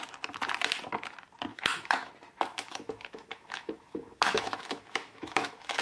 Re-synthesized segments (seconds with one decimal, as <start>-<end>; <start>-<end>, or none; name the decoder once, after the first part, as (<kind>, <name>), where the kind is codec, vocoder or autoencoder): 1.5-2.1 (autoencoder, DAC-VAE); 2.5-5.8